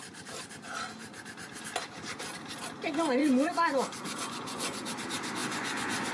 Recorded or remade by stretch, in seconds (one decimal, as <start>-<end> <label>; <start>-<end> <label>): 0.0-3.2 recorded; 3.2-4.9 remade; 4.9-5.4 recorded; 5.4-6.1 remade